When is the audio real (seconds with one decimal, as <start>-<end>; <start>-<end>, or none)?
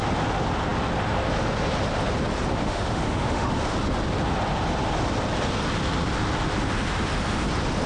0.0-2.6; 3.5-7.9